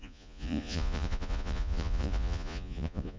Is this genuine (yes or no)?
no